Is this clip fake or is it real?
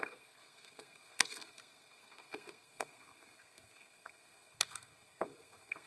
fake